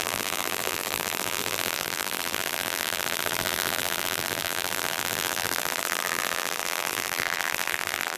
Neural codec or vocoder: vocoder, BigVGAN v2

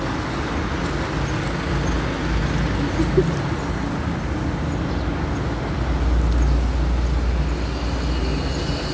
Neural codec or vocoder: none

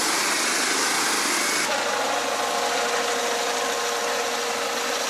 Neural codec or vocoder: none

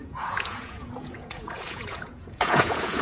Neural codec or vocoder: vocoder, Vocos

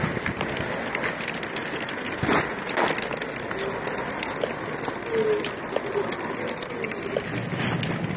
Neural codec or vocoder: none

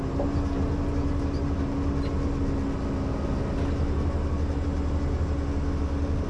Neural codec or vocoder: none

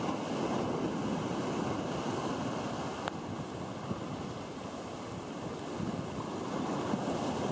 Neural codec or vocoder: none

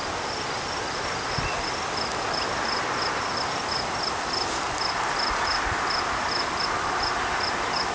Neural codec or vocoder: none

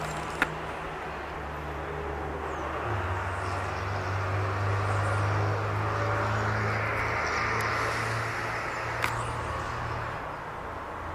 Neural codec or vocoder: none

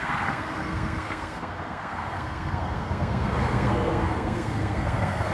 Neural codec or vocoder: codec, SNAC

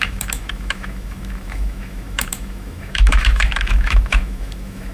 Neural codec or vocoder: autoencoder, DAC-VAE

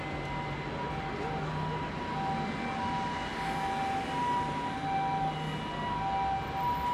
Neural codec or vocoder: none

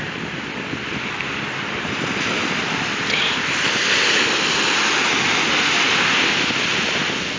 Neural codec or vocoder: none